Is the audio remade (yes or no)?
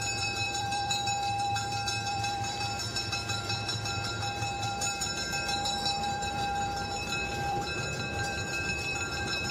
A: yes